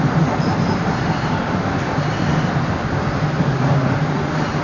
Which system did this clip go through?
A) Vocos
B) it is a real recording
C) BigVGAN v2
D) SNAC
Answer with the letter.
B